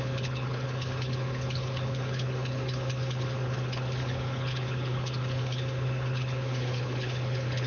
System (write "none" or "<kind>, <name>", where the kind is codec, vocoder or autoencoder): codec, HILCodec